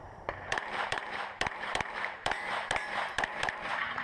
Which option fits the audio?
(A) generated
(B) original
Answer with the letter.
A